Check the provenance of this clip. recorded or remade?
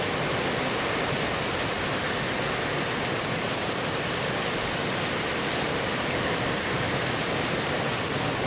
recorded